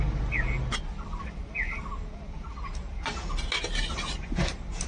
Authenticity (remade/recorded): recorded